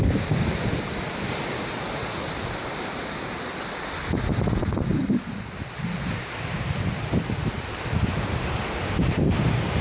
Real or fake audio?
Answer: real